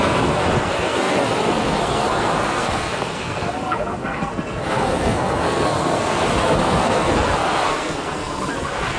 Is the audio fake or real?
fake